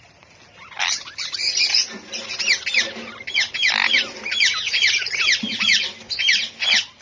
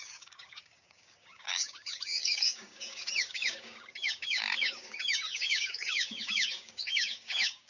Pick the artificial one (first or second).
second